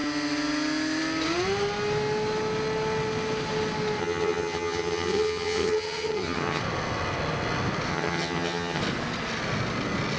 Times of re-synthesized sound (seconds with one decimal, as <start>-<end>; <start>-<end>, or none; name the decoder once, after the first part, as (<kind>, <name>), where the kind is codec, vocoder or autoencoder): 4.0-6.6 (vocoder, HiFi-GAN); 7.9-8.8